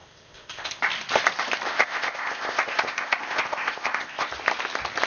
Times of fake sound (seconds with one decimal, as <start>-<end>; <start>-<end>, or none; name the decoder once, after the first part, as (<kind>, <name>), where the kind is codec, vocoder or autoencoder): 0.0-0.8 (codec, ZipCodec); 1.7-4.3